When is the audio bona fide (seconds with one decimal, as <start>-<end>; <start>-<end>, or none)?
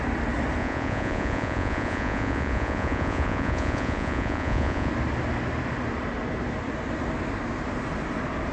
0.0-0.6; 4.9-8.5